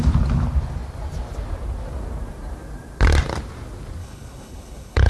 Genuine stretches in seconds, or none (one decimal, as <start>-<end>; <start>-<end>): 0.0-4.0